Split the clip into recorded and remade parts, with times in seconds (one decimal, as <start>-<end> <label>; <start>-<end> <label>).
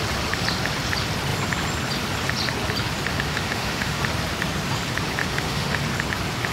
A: 0.0-3.1 recorded; 3.1-4.0 remade; 4.0-5.2 recorded; 5.2-5.8 remade; 5.8-6.5 recorded